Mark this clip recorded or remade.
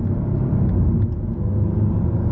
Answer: recorded